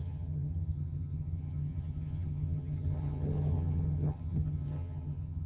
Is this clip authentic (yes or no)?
no